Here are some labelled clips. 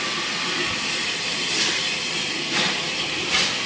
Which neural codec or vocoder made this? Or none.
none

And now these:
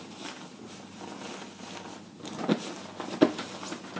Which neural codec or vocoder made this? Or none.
none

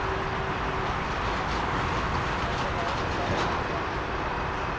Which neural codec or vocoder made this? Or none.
none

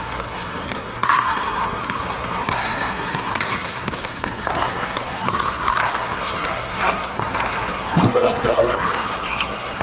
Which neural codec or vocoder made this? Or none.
codec, SNAC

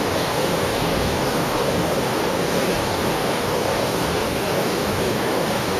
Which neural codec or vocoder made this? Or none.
codec, DAC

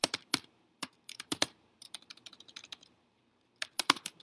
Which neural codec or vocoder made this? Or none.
vocoder, BigVGAN v2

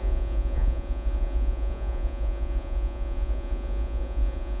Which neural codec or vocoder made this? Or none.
vocoder, Vocos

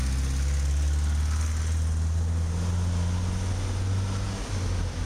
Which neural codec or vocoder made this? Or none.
none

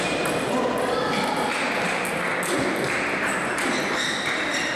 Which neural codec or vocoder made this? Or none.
none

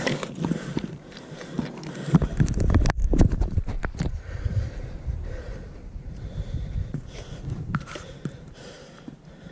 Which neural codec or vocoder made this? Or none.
vocoder, BigVGAN v2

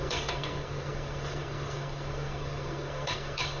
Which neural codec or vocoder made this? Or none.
codec, SNAC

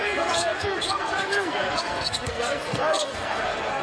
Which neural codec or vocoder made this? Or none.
codec, SNAC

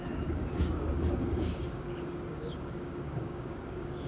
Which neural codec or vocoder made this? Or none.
codec, DAC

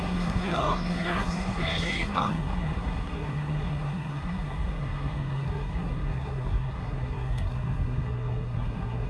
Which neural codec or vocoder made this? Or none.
codec, SNAC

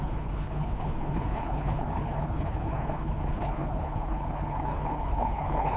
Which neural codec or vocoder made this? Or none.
codec, HILCodec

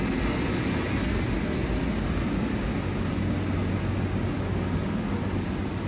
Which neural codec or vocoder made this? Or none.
none